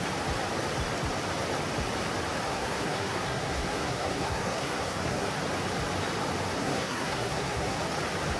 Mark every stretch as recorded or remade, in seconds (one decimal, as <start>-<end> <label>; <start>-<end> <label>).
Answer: 0.0-2.5 recorded; 2.5-5.3 remade; 5.3-6.6 recorded; 6.6-7.8 remade; 7.8-8.4 recorded